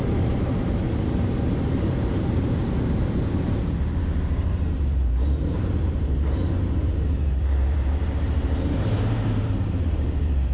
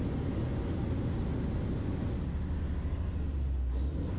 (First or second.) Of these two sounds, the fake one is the first